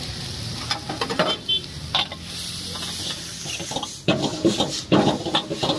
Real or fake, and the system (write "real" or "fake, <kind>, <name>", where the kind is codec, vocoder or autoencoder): real